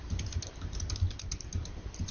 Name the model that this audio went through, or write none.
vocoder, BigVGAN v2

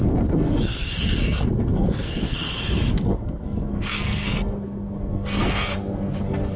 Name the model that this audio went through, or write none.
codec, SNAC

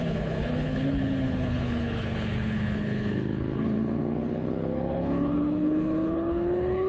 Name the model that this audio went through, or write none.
codec, HILCodec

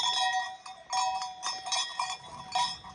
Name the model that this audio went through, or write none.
none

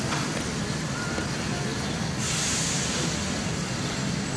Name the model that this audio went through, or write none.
none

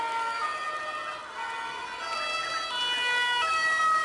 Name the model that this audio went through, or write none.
none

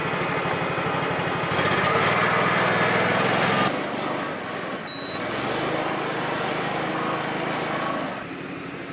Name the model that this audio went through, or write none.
none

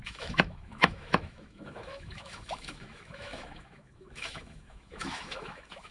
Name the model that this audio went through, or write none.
autoencoder, DAC-VAE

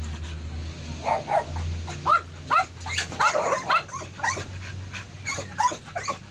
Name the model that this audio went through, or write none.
none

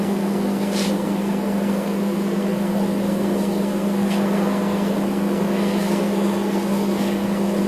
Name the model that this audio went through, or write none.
codec, SNAC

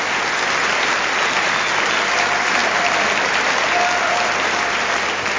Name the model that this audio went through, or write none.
none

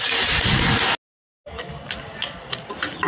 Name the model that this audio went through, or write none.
none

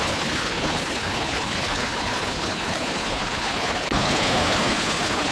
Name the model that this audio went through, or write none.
codec, HILCodec